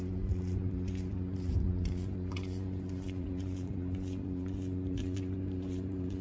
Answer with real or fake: fake